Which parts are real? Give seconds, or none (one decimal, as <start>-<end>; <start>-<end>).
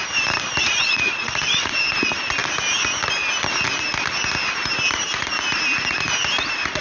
0.0-0.6; 1.7-6.8